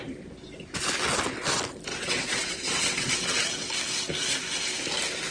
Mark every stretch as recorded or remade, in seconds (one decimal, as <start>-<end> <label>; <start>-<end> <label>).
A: 0.0-1.9 recorded; 1.9-3.5 remade; 3.5-5.3 recorded